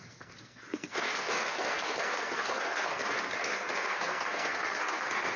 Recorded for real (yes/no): no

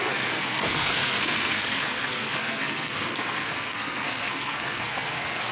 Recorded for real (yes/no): no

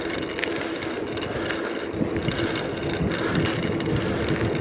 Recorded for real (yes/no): yes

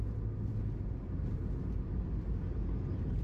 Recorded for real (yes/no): yes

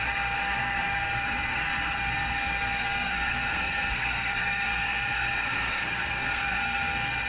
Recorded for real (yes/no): no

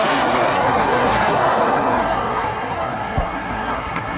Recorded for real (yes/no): no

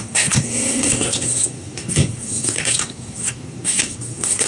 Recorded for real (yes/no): no